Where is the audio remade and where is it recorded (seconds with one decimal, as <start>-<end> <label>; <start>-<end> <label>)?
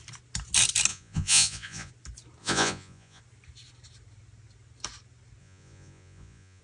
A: 0.0-0.9 recorded; 0.9-1.9 remade; 1.9-2.4 recorded; 2.4-3.2 remade; 3.2-5.4 recorded; 5.4-6.6 remade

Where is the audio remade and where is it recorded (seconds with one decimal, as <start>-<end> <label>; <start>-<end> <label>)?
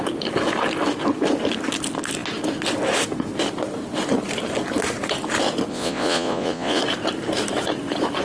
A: 0.0-5.7 recorded; 5.7-6.8 remade; 6.8-8.2 recorded